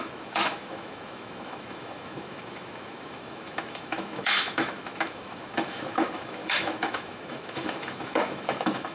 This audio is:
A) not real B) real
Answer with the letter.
A